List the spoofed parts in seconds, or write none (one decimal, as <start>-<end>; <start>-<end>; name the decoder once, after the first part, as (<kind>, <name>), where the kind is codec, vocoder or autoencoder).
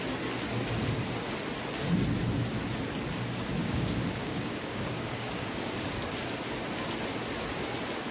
3.6-5.7 (codec, DAC)